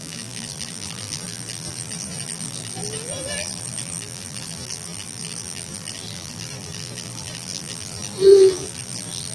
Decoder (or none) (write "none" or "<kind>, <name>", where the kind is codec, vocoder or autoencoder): vocoder, BigVGAN v2